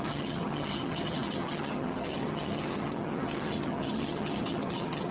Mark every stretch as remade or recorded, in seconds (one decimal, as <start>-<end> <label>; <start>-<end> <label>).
0.0-5.1 remade